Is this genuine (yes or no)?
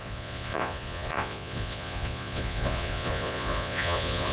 no